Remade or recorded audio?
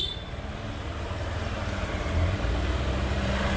recorded